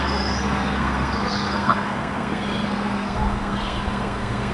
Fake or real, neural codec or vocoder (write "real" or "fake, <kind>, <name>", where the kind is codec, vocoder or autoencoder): fake, codec, SNAC